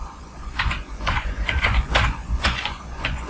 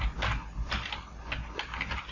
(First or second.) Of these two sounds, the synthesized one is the first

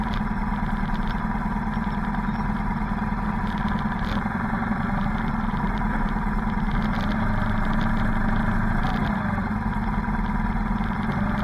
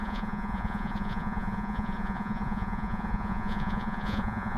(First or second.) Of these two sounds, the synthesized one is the second